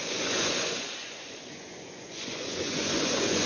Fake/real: fake